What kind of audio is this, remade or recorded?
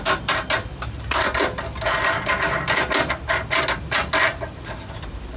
recorded